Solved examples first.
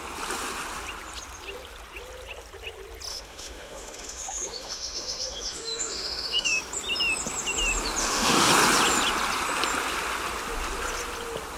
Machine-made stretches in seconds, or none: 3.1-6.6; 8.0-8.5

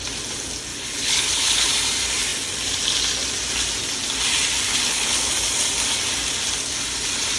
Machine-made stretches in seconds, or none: 0.7-1.7; 4.7-5.3

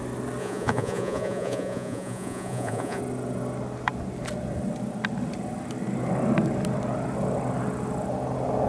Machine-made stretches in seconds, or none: 0.4-3.0